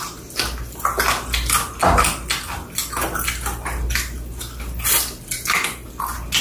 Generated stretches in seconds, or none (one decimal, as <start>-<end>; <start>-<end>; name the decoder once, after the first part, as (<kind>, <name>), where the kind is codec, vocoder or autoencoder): none